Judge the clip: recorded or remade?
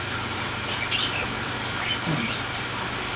remade